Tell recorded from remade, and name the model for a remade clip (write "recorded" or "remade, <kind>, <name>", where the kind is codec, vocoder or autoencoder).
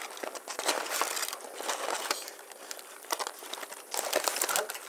recorded